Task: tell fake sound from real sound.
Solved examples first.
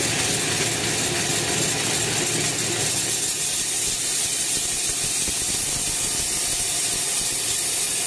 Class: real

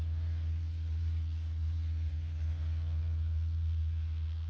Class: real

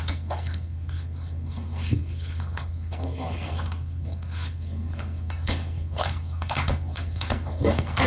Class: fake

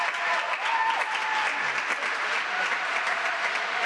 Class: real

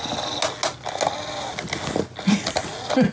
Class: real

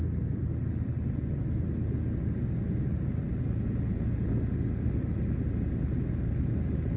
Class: real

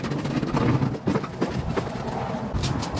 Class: real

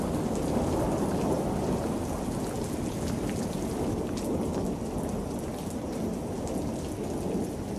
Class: real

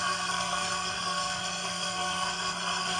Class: fake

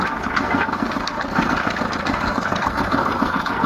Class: fake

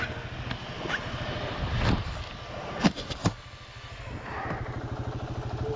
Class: real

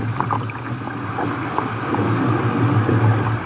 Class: real